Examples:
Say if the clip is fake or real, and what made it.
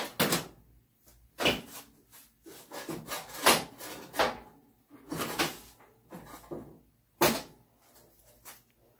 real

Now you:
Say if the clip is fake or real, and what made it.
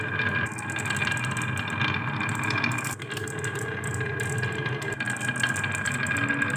real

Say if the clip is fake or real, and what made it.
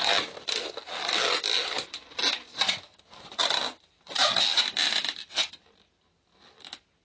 real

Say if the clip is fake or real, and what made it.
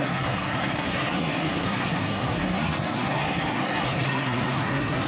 fake, codec, SNAC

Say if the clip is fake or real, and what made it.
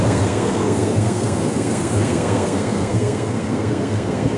fake, codec, SNAC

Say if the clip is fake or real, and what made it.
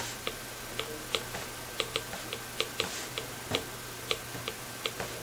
real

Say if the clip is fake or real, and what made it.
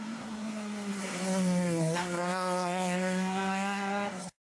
fake, codec, SNAC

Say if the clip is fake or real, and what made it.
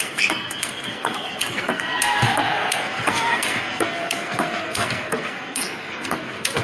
fake, codec, SNAC